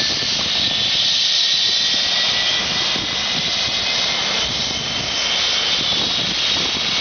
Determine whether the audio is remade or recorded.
recorded